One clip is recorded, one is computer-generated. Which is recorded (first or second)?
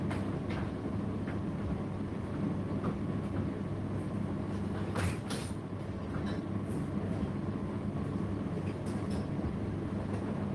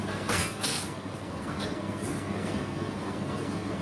first